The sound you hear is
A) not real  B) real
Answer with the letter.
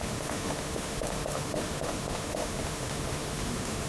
A